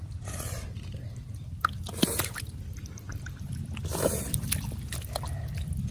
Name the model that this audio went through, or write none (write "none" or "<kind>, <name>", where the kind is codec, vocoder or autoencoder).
none